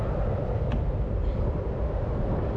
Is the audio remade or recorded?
remade